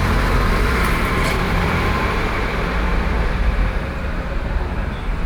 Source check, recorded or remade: remade